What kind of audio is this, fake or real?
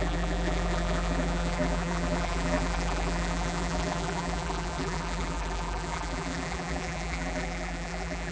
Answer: fake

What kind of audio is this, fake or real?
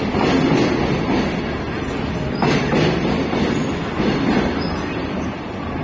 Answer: real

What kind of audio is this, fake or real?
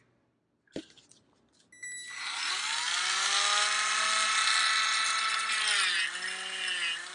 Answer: real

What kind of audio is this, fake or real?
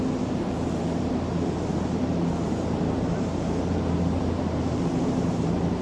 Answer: fake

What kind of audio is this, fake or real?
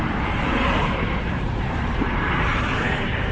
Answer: fake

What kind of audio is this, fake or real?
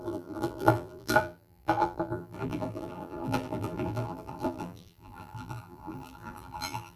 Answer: fake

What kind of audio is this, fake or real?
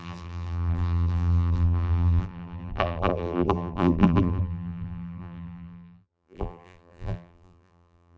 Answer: fake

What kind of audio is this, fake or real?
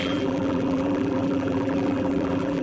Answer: fake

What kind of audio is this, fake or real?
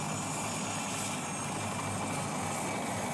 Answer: real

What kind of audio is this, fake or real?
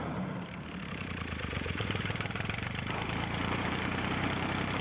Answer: fake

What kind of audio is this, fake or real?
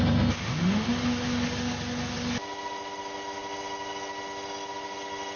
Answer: real